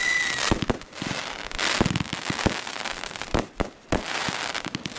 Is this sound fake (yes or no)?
yes